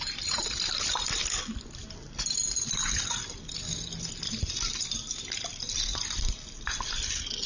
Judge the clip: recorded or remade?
recorded